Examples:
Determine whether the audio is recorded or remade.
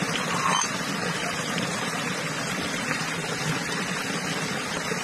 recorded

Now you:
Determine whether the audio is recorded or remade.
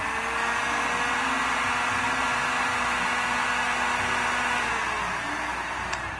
recorded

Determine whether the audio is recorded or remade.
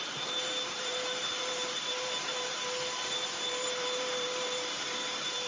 remade